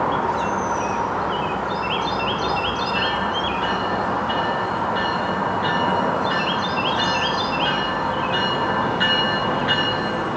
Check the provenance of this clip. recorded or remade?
recorded